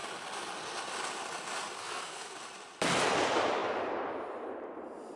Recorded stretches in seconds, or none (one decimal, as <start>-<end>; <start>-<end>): 0.0-1.8; 2.4-5.2